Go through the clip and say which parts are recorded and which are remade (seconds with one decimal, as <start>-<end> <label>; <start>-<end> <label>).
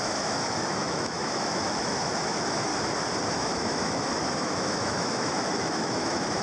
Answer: 0.0-2.7 remade; 2.7-3.3 recorded; 3.3-6.4 remade